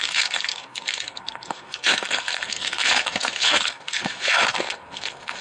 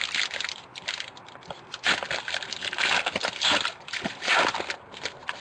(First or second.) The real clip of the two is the second